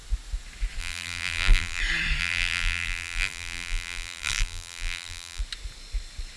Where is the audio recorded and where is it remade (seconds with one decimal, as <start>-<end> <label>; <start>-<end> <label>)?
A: 0.0-0.8 recorded; 0.8-1.8 remade; 1.8-2.2 recorded; 2.2-5.4 remade; 5.4-6.4 recorded